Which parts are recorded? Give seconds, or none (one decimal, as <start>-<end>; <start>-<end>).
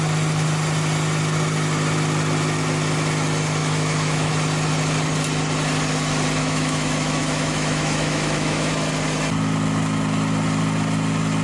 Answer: 0.0-3.6; 4.3-6.4; 8.7-11.4